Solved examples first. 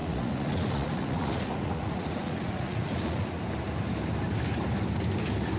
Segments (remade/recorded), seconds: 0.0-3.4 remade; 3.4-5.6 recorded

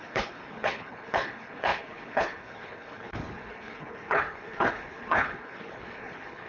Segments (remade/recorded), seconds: 0.0-6.5 remade

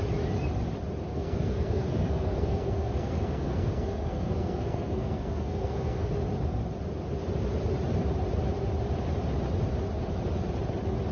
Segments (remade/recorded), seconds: 0.0-1.1 recorded; 1.1-6.1 remade; 6.1-11.1 recorded

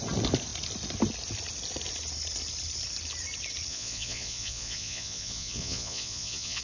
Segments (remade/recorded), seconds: 0.0-3.7 recorded; 3.7-6.6 remade

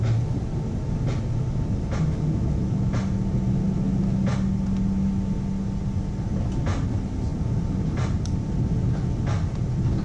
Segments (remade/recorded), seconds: 0.0-10.0 recorded

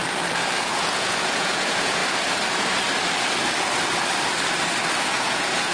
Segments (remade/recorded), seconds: 0.0-0.6 recorded; 0.6-2.0 remade; 2.0-5.0 recorded; 5.0-5.7 remade